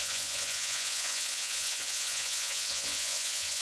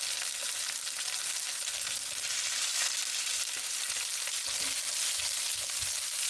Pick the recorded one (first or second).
second